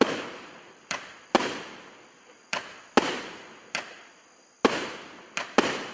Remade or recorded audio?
recorded